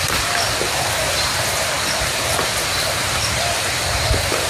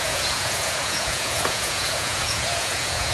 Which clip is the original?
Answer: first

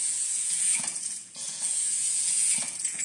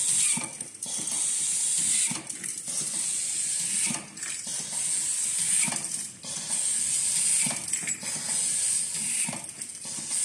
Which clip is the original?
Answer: second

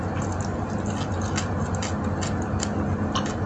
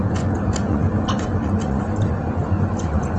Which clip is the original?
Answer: first